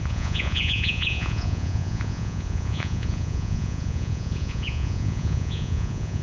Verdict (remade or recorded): remade